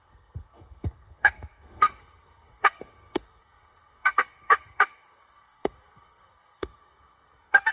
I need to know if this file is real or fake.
fake